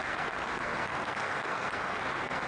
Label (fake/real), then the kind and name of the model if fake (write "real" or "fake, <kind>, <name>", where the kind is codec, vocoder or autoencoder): fake, codec, SNAC